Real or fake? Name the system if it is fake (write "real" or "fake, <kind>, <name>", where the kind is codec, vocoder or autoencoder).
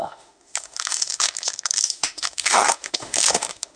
fake, autoencoder, DAC-VAE